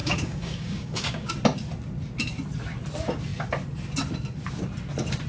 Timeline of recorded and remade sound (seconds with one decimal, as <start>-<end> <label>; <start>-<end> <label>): 0.0-1.3 remade; 1.3-5.3 recorded